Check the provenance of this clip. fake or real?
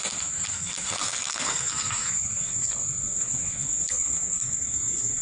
fake